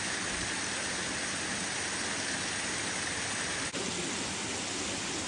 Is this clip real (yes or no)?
yes